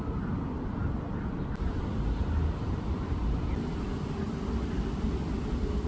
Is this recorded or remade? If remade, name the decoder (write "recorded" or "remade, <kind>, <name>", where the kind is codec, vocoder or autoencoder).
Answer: recorded